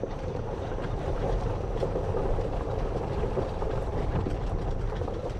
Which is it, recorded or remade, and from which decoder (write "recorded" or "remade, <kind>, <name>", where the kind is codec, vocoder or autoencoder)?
remade, vocoder, BigVGAN v2